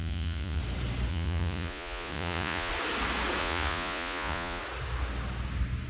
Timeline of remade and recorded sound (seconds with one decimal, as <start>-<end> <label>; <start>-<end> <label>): 0.0-0.6 remade; 0.6-1.1 recorded; 1.1-2.7 remade; 2.7-3.4 recorded; 3.4-4.6 remade; 4.6-5.9 recorded